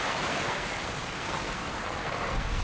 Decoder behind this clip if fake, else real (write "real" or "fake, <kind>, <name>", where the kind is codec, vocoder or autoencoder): fake, codec, SNAC